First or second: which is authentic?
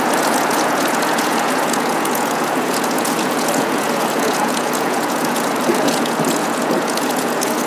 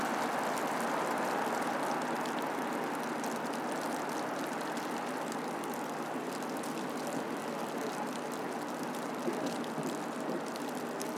second